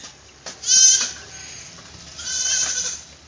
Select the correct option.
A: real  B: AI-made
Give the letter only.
A